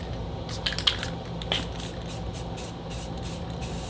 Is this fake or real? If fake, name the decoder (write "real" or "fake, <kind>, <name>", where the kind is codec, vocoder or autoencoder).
real